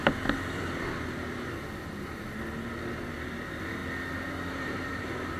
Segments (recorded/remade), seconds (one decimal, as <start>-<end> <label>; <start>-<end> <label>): 0.0-3.2 recorded; 3.2-3.8 remade; 3.8-4.5 recorded; 4.5-5.4 remade